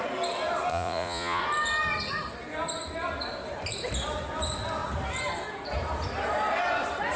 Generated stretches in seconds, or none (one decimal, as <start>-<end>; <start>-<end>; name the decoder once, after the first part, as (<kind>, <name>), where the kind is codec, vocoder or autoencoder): 0.7-1.4 (vocoder, Vocos)